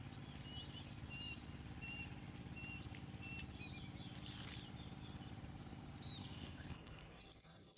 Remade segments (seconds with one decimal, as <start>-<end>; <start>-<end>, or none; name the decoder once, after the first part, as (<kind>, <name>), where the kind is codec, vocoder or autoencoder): 6.2-7.8 (codec, SNAC)